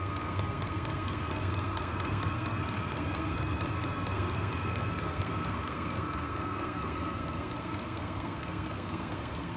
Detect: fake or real fake